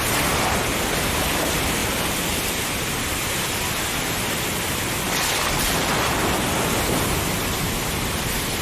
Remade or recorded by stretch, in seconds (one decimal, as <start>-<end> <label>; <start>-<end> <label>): 0.0-8.6 recorded